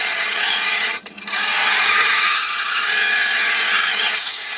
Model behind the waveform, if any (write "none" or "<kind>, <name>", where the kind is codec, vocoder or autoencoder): vocoder, HiFi-GAN